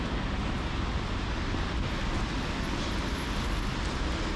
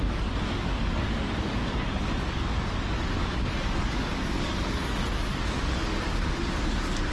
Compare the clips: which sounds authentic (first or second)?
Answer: first